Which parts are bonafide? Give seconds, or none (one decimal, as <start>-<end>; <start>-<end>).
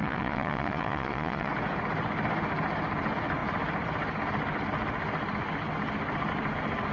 1.5-6.9